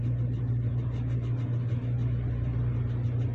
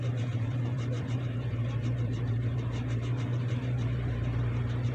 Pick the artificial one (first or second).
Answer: second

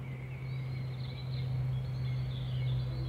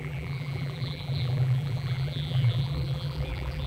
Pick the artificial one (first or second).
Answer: second